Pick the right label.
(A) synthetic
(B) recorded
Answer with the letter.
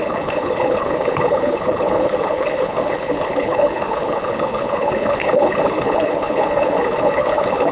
A